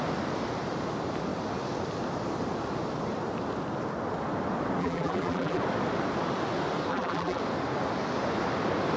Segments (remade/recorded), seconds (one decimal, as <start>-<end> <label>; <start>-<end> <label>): 0.0-4.8 recorded; 4.8-5.6 remade; 5.6-6.9 recorded; 6.9-7.4 remade; 7.4-9.0 recorded